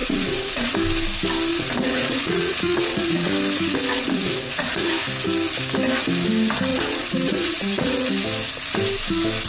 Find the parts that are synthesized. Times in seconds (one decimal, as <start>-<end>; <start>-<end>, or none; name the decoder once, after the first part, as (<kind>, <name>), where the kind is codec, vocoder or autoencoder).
0.0-0.7 (vocoder, Vocos); 1.5-3.3; 3.9-4.9; 6.7-8.1